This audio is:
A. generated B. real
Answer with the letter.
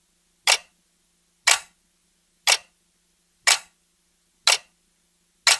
B